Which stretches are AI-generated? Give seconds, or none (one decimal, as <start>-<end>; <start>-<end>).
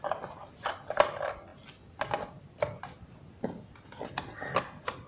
none